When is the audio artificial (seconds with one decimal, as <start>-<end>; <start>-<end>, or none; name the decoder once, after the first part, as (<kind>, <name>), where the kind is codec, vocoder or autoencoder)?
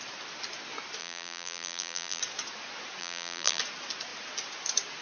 1.0-2.2 (vocoder, BigVGAN v2); 3.0-3.6